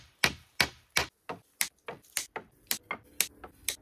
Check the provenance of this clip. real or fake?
real